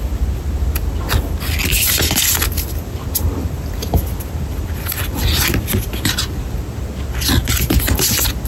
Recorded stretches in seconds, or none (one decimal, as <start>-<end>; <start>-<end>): 0.0-8.5